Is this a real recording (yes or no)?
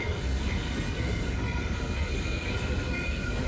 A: no